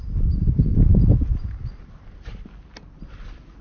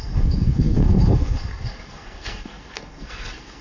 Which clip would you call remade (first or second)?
second